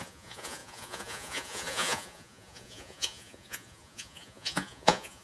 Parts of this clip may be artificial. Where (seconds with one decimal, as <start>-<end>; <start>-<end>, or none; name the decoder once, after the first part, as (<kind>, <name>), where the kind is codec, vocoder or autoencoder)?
0.0-5.2 (vocoder, Vocos)